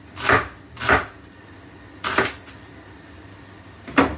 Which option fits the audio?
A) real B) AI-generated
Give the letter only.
A